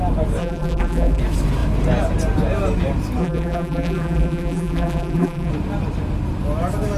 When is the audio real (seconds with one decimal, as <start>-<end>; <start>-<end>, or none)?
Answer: 0.0-0.4; 1.2-3.2; 5.5-7.0